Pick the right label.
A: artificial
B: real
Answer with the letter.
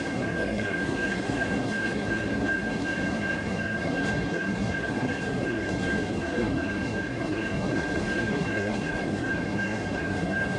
A